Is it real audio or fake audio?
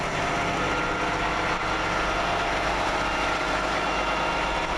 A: real